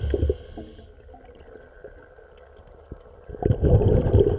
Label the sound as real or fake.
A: real